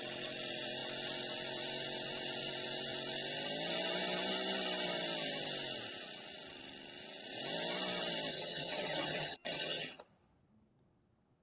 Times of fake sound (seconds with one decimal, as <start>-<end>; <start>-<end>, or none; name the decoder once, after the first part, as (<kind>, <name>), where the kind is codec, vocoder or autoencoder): 8.3-10.0 (vocoder, HiFi-GAN)